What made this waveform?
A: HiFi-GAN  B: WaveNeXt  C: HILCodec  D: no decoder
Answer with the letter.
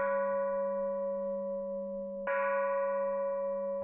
D